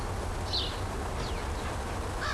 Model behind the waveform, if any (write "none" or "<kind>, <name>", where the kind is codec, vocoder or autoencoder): none